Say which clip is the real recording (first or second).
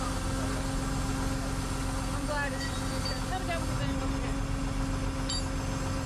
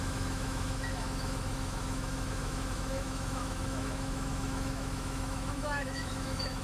first